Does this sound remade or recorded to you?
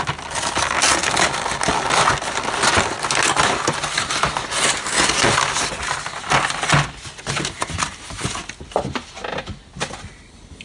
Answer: recorded